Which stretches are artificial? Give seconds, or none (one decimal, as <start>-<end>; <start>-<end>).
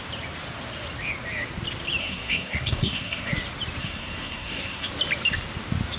2.0-3.3; 3.8-4.9